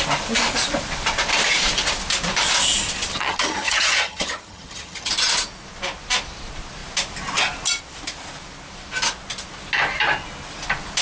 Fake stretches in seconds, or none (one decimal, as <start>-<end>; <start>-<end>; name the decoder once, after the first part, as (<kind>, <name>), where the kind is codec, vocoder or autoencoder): 3.1-5.1 (vocoder, HiFi-GAN)